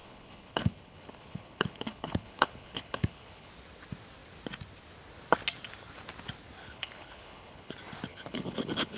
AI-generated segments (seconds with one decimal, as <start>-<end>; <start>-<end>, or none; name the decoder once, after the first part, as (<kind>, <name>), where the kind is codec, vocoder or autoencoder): 0.0-3.5 (codec, HILCodec); 6.6-7.7; 8.1-9.0